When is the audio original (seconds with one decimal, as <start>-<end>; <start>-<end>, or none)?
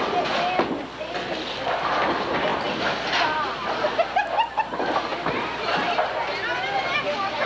0.0-7.5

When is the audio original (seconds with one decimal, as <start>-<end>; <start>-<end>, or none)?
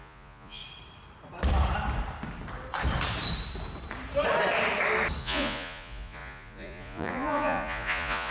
0.6-5.2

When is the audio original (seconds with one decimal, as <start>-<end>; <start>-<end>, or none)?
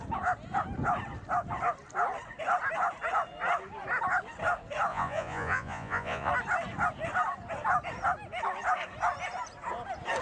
0.0-4.9; 6.3-10.2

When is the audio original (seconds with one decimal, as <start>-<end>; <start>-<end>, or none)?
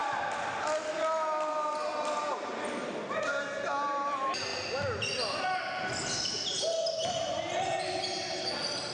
0.0-8.9